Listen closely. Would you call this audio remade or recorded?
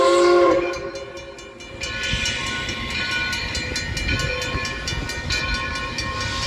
recorded